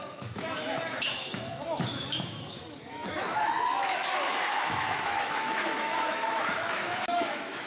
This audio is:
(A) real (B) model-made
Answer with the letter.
B